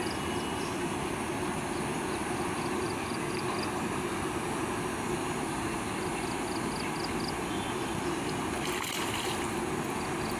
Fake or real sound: real